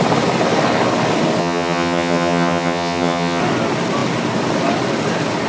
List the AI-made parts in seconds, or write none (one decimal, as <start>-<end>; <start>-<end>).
1.4-3.4